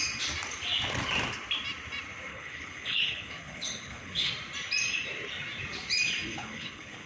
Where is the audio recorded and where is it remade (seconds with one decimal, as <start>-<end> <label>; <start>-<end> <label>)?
0.0-2.3 recorded; 2.3-4.3 remade; 4.3-6.3 recorded; 6.3-7.1 remade